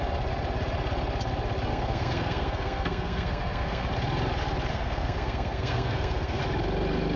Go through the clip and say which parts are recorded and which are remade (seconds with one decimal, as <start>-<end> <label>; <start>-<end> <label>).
0.0-1.7 recorded; 1.7-3.8 remade; 3.8-4.7 recorded; 4.7-6.4 remade; 6.4-7.2 recorded